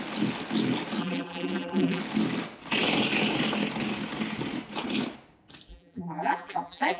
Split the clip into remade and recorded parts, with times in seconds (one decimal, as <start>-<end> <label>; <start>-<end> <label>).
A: 0.0-1.0 recorded; 1.0-2.0 remade; 2.0-5.7 recorded; 5.7-7.0 remade